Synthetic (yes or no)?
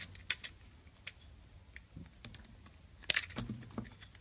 no